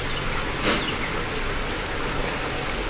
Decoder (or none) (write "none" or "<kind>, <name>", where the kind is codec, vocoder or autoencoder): none